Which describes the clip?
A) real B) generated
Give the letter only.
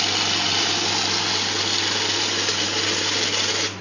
A